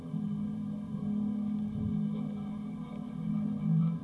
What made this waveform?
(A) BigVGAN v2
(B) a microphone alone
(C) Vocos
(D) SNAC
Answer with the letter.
A